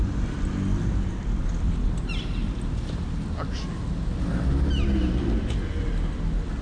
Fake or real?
real